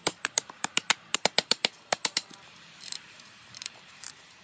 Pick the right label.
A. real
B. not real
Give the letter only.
B